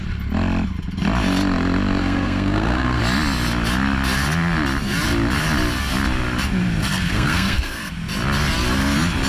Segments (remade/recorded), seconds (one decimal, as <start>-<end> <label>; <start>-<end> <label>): 0.0-2.0 recorded; 2.0-3.0 remade; 3.0-6.8 recorded; 6.8-7.9 remade; 7.9-9.3 recorded